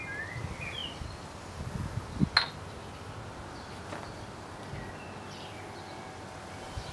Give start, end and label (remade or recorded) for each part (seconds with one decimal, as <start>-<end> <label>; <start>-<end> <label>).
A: 0.0-6.9 recorded